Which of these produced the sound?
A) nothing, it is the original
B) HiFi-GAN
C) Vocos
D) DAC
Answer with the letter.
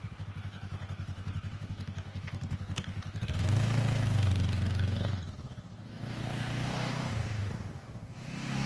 D